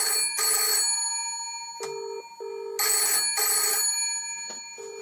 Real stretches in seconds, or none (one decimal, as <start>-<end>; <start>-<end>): 0.0-5.0